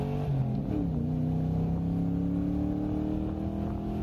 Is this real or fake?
real